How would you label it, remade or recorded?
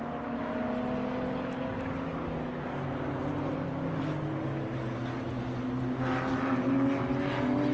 recorded